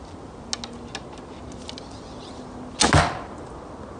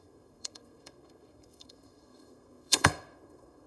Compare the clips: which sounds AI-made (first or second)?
second